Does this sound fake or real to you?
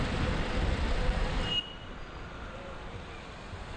real